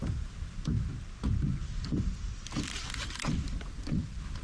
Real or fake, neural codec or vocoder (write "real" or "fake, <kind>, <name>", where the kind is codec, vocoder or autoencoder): real